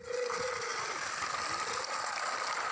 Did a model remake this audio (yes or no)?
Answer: no